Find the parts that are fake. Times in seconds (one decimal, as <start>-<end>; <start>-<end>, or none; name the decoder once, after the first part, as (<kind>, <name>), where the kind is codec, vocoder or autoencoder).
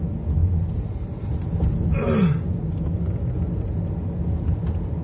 none